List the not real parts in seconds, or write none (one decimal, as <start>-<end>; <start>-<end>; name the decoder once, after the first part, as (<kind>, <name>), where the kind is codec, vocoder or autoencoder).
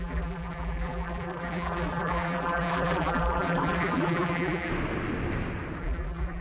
0.0-4.7 (vocoder, BigVGAN v2); 5.8-6.4